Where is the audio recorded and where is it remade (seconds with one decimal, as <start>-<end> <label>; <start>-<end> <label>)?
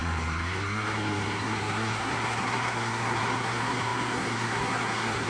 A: 0.0-5.3 remade